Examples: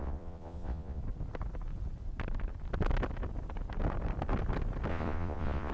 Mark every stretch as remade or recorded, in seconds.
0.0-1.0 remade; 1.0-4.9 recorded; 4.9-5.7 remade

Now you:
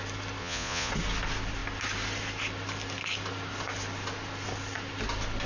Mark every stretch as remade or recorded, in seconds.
0.0-0.4 recorded; 0.4-0.9 remade; 0.9-5.5 recorded

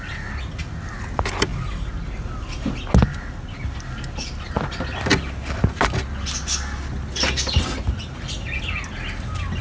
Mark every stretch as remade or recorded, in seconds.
0.0-9.6 recorded

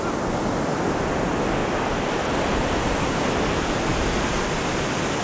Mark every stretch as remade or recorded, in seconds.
0.0-5.2 recorded

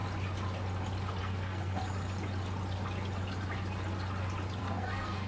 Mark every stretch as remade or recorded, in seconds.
0.0-1.2 recorded; 1.2-1.8 remade; 1.8-4.6 recorded; 4.6-5.3 remade

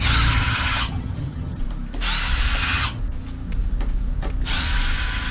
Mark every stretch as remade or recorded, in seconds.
0.0-1.6 remade; 1.6-2.6 recorded; 2.6-3.0 remade; 3.0-5.3 recorded

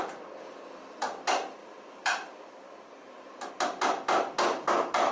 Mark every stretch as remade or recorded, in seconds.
0.0-1.6 recorded; 1.6-3.5 remade; 3.5-5.1 recorded

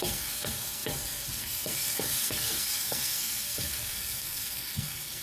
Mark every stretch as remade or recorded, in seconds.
0.0-5.2 remade